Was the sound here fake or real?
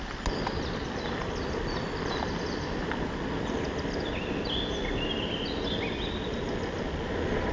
real